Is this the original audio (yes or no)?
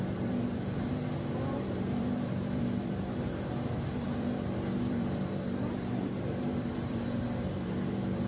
no